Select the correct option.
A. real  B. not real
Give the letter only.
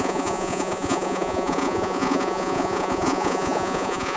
B